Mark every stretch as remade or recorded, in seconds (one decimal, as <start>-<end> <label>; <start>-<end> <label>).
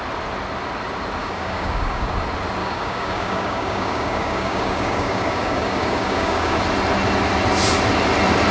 0.0-1.2 recorded; 1.2-2.1 remade; 2.1-2.6 recorded; 2.6-6.6 remade; 6.6-8.5 recorded